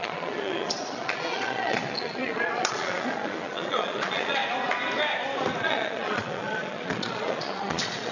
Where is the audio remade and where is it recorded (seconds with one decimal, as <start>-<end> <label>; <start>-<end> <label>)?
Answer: 0.0-4.4 remade; 4.4-5.6 recorded; 5.6-8.1 remade